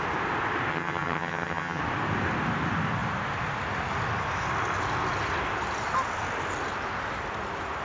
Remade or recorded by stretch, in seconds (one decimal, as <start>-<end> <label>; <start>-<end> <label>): 0.0-0.7 recorded; 0.7-1.8 remade; 1.8-7.8 recorded